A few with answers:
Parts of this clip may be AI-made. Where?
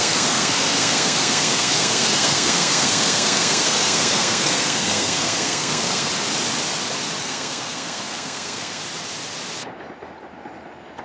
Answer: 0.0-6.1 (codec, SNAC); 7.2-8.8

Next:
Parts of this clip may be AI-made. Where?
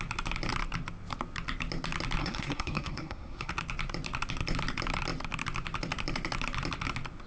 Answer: 2.2-3.5 (codec, SNAC)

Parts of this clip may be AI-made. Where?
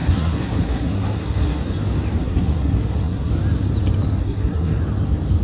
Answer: 0.0-1.6 (codec, SNAC); 2.2-3.3; 4.2-4.8